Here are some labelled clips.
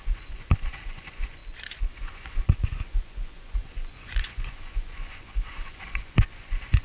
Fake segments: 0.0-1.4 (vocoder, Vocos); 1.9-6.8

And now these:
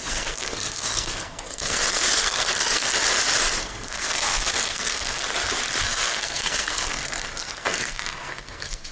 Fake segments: 0.0-2.9 (codec, SNAC); 3.6-5.2; 5.8-8.9

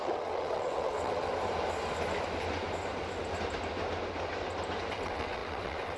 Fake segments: 0.0-1.3 (vocoder, WaveNeXt); 4.9-6.0

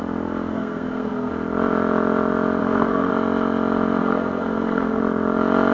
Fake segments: 0.5-1.3 (codec, SNAC); 2.6-3.1; 4.0-5.0